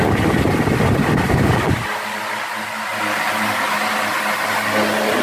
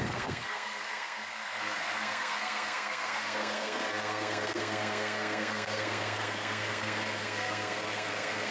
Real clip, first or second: first